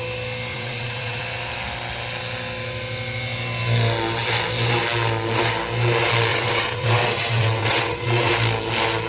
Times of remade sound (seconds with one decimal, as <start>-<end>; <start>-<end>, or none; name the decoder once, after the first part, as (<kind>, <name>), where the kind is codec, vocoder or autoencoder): 0.5-1.2 (vocoder, WaveNeXt); 6.3-8.3